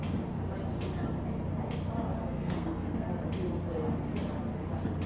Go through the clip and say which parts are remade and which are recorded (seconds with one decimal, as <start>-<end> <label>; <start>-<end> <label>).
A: 0.0-2.2 recorded; 2.2-3.1 remade; 3.1-5.1 recorded